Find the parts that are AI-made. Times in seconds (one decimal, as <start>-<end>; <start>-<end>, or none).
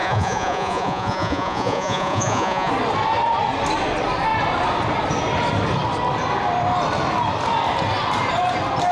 0.0-2.7